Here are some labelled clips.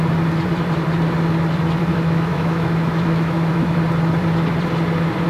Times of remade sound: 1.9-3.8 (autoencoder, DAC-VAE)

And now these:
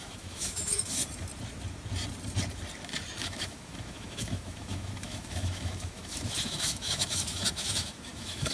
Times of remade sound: 0.0-1.0 (autoencoder, DAC-VAE); 3.2-8.5

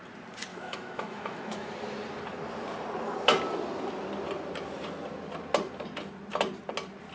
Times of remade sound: 0.5-1.7 (autoencoder, DAC-VAE)

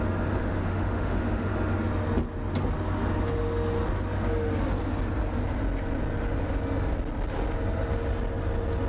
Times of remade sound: 0.4-1.5 (autoencoder, DAC-VAE)

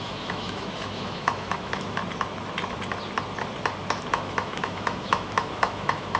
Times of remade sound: 0.0-2.0 (autoencoder, DAC-VAE); 4.1-6.2